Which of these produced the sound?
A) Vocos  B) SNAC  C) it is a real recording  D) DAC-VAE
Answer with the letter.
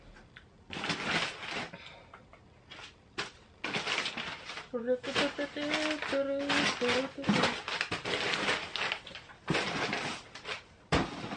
C